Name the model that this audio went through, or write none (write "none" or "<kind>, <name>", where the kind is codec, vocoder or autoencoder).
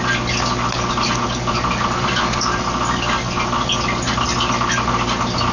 none